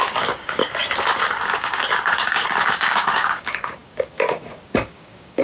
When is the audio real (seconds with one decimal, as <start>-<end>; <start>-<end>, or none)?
0.6-1.2